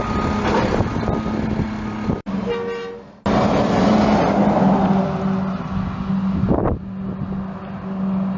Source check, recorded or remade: recorded